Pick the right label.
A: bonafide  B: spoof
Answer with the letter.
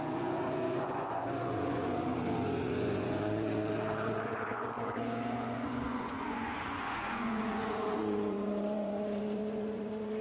B